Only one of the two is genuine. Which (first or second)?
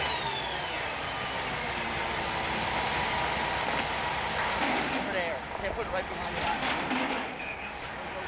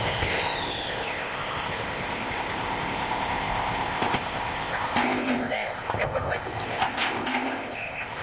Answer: first